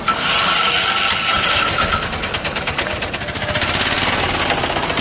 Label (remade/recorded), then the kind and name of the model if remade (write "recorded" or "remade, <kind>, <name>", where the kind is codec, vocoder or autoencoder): recorded